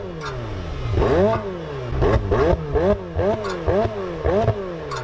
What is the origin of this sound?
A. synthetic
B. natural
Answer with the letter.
B